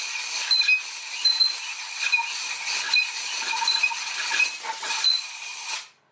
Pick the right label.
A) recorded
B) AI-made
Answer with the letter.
A